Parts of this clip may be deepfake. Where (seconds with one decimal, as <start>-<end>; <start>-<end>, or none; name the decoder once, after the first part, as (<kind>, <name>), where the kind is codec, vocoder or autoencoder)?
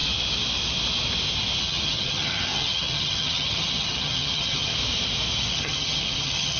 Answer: 1.6-4.7 (vocoder, HiFi-GAN); 5.5-6.6